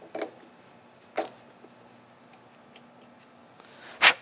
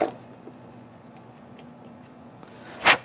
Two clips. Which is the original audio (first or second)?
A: first